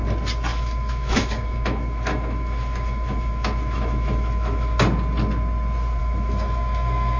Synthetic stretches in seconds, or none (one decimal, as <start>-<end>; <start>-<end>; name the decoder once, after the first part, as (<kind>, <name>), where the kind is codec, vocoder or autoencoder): 0.5-4.8 (autoencoder, DAC-VAE); 6.0-7.2